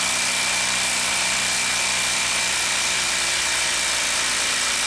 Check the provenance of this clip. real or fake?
fake